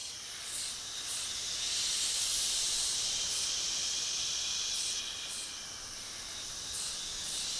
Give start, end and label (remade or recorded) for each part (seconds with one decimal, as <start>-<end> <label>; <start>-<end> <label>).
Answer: 0.0-7.6 recorded